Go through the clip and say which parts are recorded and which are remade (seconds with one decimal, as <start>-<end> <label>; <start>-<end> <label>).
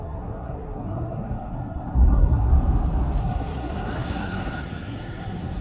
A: 0.0-2.5 remade; 2.5-3.2 recorded; 3.2-5.6 remade